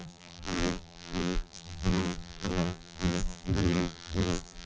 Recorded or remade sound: remade